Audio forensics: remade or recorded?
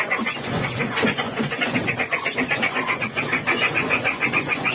remade